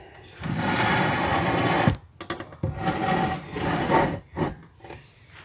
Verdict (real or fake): real